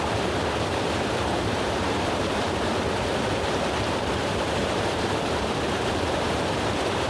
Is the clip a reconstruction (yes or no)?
yes